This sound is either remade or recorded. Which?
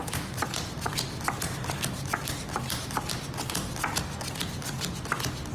recorded